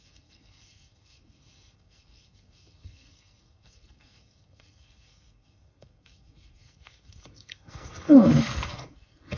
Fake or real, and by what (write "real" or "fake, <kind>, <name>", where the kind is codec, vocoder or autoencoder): fake, codec, SNAC